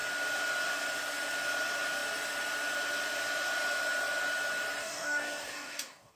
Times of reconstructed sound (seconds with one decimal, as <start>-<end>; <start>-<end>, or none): 4.8-6.2

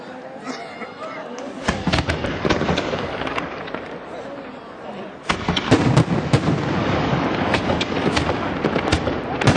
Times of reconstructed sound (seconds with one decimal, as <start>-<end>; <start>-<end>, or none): 1.2-3.6; 6.8-8.5

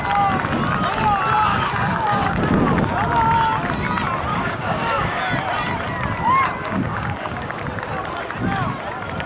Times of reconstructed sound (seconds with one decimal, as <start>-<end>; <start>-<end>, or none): 1.5-2.4; 4.3-5.2; 6.6-7.6